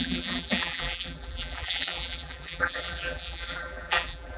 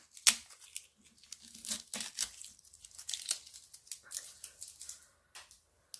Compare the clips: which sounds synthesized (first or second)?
first